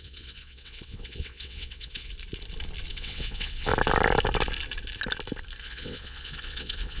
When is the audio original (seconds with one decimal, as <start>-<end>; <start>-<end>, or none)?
2.1-2.9; 3.7-5.6